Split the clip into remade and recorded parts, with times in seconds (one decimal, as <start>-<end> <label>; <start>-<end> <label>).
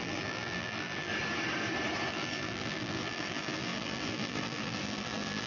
0.0-1.1 remade; 1.1-2.1 recorded; 2.1-5.5 remade